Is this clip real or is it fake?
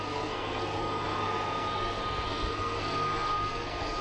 fake